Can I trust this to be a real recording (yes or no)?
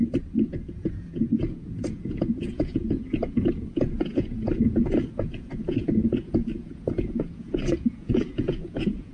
no